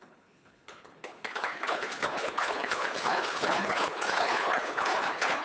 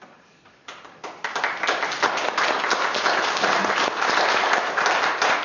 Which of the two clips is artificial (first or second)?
first